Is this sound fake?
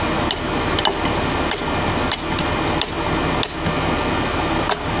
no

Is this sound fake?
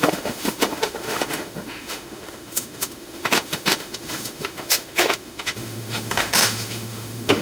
yes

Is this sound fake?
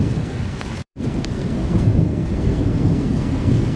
yes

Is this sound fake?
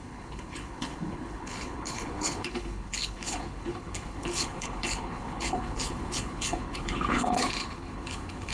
yes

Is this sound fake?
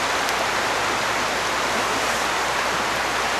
no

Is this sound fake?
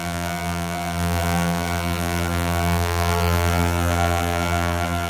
yes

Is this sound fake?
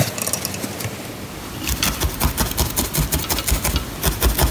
no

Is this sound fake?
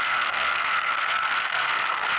yes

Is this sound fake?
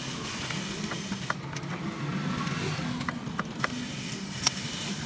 no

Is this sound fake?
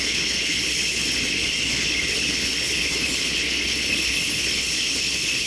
yes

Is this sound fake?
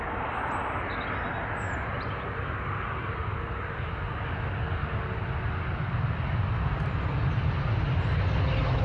no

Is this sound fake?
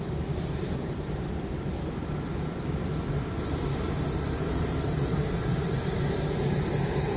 yes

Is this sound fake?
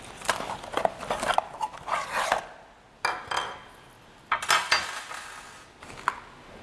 no